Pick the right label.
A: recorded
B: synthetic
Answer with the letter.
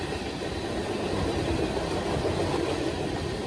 A